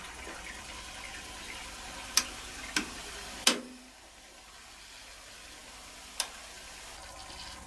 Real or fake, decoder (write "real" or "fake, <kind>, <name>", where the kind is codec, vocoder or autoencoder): real